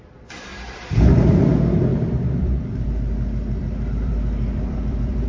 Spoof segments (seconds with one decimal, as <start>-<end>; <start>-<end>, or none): 0.5-1.4; 1.9-5.3